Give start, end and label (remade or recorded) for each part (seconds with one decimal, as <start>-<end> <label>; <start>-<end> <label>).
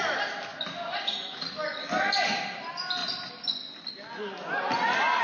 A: 0.0-5.2 recorded